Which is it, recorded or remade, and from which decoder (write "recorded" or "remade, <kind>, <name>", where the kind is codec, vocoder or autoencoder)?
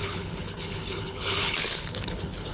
remade, codec, HILCodec